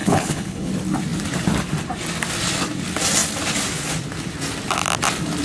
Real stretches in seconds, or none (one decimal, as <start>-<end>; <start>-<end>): 0.7-5.4